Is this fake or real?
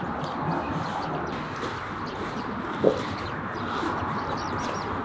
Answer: real